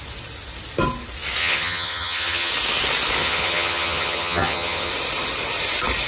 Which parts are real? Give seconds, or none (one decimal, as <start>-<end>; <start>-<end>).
0.0-1.4; 2.5-3.2; 4.9-6.1